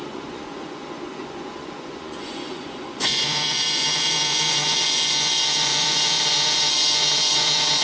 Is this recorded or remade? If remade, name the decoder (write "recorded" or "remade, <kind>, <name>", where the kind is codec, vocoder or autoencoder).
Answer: remade, vocoder, Vocos